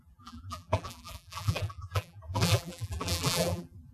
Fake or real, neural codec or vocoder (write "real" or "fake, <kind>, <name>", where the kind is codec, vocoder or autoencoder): fake, vocoder, BigVGAN v2